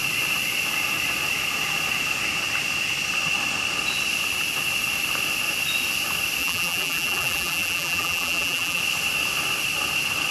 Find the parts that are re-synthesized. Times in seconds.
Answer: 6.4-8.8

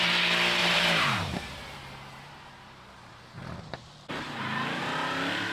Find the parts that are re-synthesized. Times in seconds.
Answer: 0.6-3.9

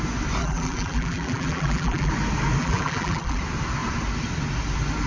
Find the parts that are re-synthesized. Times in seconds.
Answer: 0.4-2.1; 2.6-3.4

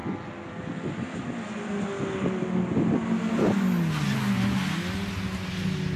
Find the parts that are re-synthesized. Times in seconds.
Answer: 0.0-0.9

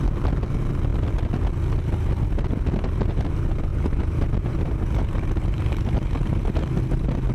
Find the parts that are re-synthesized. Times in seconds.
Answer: 3.7-6.7

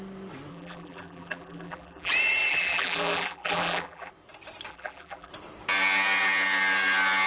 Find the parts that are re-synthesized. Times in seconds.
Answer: 0.5-2.1; 2.5-4.1; 4.7-5.3

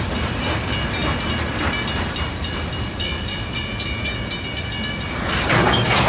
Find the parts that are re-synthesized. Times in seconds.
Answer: none

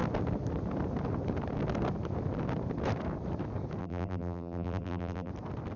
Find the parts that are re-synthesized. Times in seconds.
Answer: 3.8-5.3